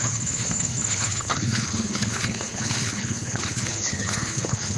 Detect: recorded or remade remade